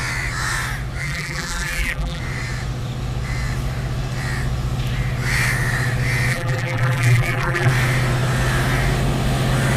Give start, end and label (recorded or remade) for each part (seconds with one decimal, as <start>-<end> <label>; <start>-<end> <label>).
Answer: 0.0-1.0 recorded; 1.0-2.2 remade; 2.2-6.3 recorded; 6.3-7.7 remade; 7.7-9.8 recorded